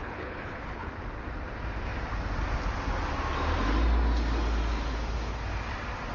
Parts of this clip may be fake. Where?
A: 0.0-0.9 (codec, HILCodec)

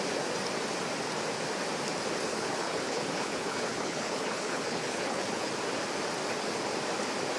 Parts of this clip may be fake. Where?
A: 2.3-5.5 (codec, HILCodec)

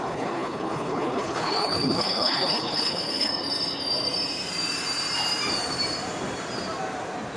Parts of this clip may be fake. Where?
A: 0.0-3.3 (codec, HILCodec)

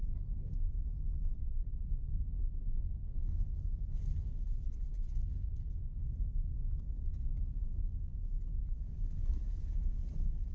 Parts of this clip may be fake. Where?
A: 0.0-0.7 (codec, HILCodec); 1.4-6.0

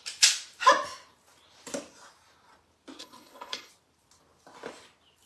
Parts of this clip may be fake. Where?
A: 3.0-3.7 (codec, HILCodec)

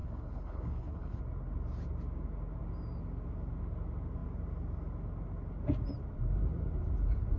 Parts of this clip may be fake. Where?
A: 0.0-1.2 (codec, HILCodec)